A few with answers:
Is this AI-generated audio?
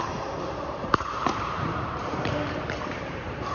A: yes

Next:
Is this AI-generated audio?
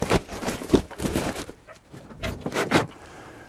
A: yes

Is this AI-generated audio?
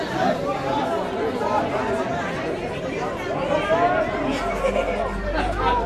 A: no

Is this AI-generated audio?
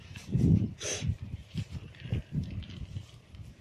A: yes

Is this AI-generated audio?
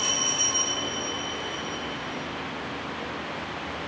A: no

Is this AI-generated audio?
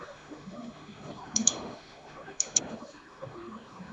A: yes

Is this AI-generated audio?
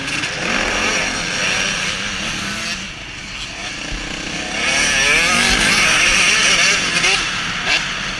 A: no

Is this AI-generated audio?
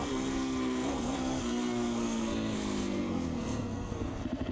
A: yes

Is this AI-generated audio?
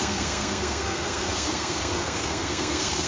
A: yes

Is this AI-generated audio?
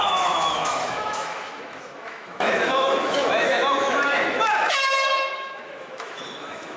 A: yes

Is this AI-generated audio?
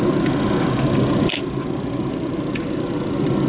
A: no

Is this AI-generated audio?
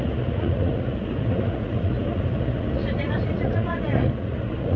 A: yes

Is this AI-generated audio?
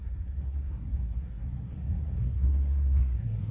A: yes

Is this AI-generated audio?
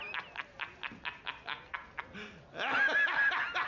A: no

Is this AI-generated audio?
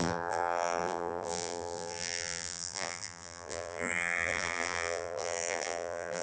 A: yes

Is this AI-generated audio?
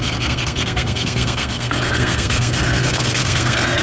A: yes